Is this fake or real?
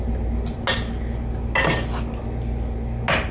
real